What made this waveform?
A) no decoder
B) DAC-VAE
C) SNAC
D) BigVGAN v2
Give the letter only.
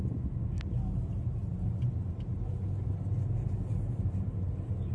A